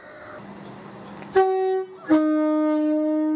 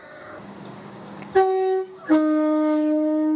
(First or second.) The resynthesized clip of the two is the second